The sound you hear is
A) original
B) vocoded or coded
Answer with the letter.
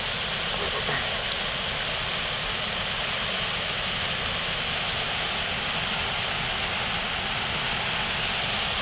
A